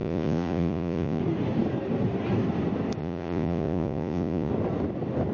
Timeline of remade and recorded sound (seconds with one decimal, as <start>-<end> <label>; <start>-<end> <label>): 0.0-1.2 remade; 1.2-3.0 recorded; 3.0-4.5 remade; 4.5-5.3 recorded